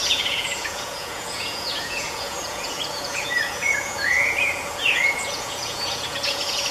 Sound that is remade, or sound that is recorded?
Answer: remade